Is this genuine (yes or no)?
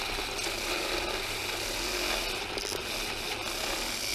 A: yes